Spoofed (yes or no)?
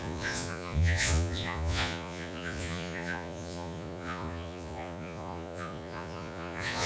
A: yes